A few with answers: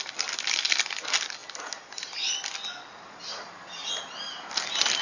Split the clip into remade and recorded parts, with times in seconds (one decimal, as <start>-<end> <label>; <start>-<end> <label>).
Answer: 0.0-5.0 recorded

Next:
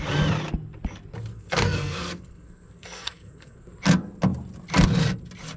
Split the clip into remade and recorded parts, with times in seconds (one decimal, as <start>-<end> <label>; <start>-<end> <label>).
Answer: 0.0-1.3 recorded; 1.3-3.7 remade; 3.7-5.6 recorded

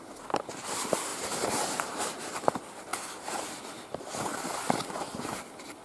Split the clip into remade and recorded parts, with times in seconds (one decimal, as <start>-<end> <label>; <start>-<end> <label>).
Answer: 0.0-1.1 recorded; 1.1-2.3 remade; 2.3-2.9 recorded; 2.9-3.6 remade; 3.6-5.8 recorded

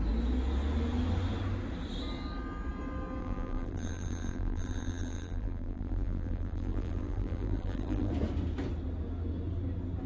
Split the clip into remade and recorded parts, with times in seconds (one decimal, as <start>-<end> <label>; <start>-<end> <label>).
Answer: 0.0-3.2 recorded; 3.2-8.1 remade; 8.1-10.1 recorded